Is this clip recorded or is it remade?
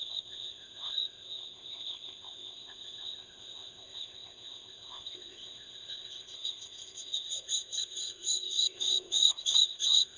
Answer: remade